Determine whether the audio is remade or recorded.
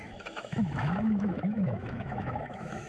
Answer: remade